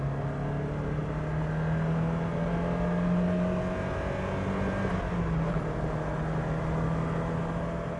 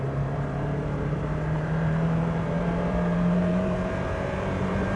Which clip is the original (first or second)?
first